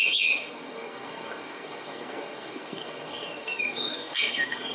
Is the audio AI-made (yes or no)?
yes